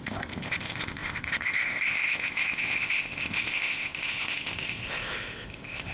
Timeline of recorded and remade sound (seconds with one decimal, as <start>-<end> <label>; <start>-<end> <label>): 0.0-5.9 remade